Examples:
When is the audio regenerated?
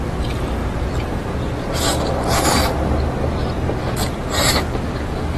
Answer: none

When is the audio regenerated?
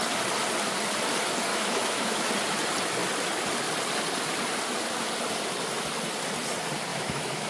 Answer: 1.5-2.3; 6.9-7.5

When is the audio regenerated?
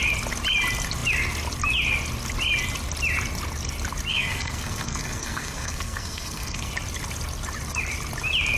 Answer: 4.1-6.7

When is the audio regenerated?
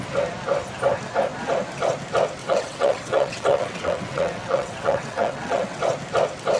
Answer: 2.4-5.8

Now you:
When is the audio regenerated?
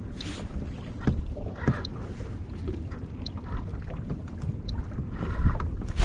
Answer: 0.0-0.5; 1.2-2.6; 3.2-3.7; 5.5-6.0